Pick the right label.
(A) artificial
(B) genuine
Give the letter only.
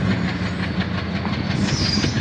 B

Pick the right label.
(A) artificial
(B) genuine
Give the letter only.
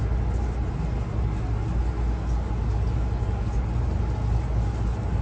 B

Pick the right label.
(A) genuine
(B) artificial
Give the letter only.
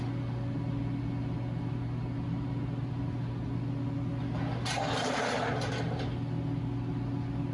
A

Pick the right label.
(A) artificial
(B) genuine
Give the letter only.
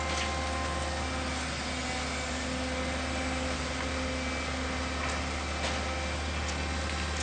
B